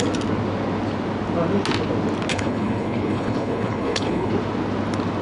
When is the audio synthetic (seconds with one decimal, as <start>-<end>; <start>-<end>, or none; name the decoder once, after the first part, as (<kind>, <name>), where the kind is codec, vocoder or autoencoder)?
2.3-4.3 (codec, HILCodec)